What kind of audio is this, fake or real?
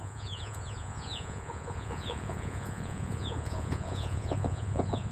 fake